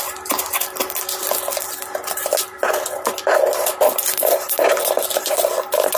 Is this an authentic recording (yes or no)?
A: yes